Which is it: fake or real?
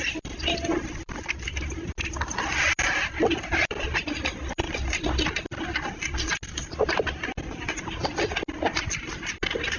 real